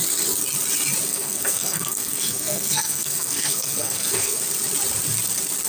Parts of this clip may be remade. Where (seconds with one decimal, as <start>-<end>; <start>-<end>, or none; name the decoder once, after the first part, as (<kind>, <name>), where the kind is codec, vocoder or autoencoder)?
1.1-4.4 (codec, SNAC)

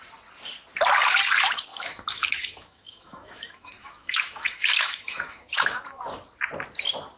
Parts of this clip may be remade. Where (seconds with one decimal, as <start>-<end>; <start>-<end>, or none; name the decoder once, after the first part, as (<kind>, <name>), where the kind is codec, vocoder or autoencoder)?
1.7-6.0 (autoencoder, DAC-VAE)

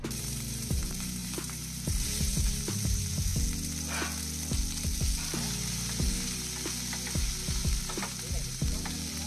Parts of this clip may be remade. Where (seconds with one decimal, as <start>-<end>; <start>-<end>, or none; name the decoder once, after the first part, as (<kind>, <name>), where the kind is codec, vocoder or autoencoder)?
0.0-3.3 (vocoder, BigVGAN v2); 8.3-9.3

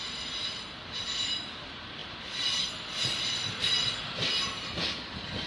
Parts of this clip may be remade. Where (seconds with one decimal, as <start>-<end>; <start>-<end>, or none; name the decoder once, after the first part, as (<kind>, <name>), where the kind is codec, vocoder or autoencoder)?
none

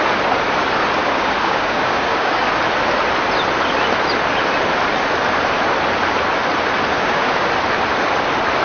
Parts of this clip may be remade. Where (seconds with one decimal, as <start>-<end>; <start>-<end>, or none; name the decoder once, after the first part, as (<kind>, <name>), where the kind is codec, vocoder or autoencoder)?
1.0-2.6 (codec, DAC); 6.9-7.5